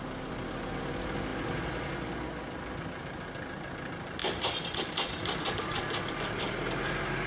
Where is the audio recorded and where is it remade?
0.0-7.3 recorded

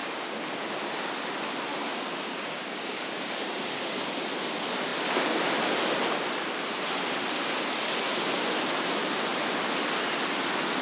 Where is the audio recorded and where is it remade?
0.0-1.7 recorded; 1.7-4.0 remade; 4.0-10.8 recorded

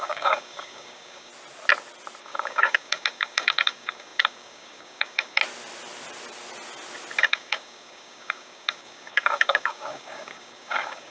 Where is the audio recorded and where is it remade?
0.0-1.3 remade; 1.3-2.2 recorded; 2.2-5.4 remade; 5.4-7.2 recorded; 7.2-11.1 remade

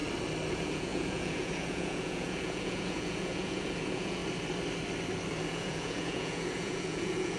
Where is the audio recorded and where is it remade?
0.0-0.5 recorded; 0.5-4.2 remade; 4.2-5.5 recorded; 5.5-7.4 remade

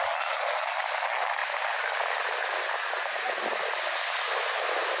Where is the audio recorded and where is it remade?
0.0-5.0 recorded

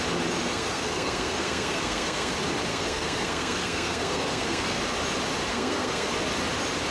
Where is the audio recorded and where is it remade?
0.0-0.5 recorded; 0.5-2.3 remade; 2.3-2.7 recorded; 2.7-4.8 remade; 4.8-5.5 recorded; 5.5-6.1 remade; 6.1-6.9 recorded

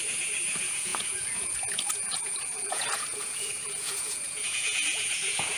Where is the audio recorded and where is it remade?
0.0-5.6 remade